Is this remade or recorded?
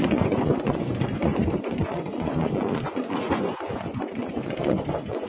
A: remade